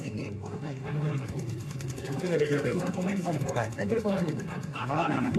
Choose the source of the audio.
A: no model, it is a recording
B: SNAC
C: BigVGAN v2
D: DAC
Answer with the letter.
B